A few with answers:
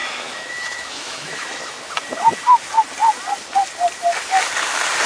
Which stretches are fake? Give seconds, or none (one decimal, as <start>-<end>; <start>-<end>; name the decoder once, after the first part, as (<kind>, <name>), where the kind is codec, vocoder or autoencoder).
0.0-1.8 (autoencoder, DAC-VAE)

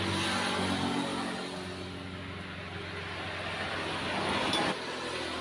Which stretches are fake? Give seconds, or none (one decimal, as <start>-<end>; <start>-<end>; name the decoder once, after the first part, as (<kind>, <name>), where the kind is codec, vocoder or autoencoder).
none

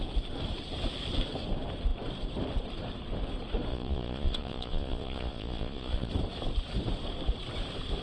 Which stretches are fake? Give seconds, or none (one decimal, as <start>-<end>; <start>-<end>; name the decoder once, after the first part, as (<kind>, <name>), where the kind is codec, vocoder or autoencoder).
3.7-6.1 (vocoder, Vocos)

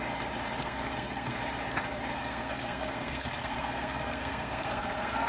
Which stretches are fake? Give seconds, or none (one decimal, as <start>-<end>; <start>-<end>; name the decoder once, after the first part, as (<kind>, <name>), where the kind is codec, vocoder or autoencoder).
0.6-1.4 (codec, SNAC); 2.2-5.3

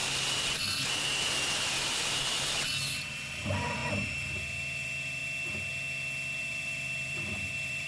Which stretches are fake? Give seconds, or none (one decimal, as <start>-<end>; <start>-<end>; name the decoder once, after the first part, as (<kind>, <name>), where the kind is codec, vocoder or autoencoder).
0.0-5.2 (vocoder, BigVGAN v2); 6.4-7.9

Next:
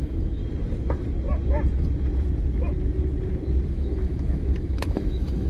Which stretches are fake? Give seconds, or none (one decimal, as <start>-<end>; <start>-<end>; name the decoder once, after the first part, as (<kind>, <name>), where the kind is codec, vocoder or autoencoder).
0.0-0.4 (autoencoder, DAC-VAE); 3.7-5.5

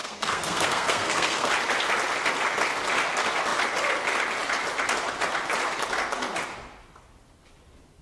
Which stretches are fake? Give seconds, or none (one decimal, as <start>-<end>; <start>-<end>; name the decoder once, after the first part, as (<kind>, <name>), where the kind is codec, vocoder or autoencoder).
0.0-1.5 (codec, SNAC)